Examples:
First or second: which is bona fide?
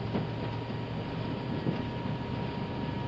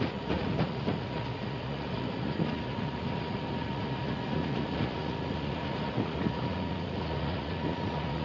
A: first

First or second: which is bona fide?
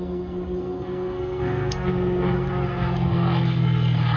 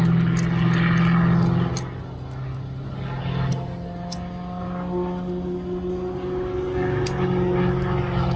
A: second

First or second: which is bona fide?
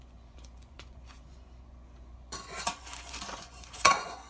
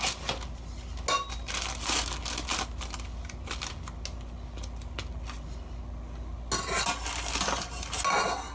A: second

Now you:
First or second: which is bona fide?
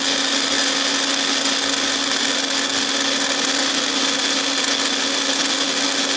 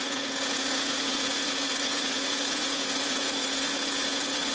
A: first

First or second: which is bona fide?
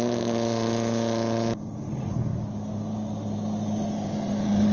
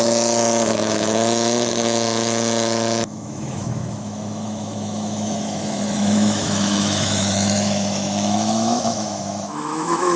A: first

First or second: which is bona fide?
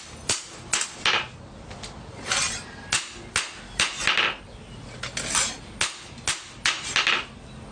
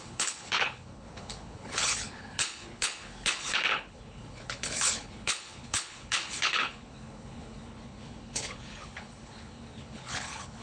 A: first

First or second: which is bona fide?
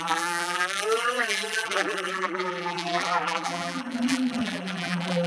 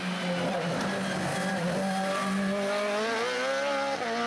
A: second